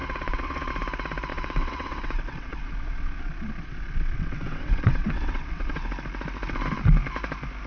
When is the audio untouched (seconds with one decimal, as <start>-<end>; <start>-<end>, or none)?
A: 0.7-1.3; 5.9-7.7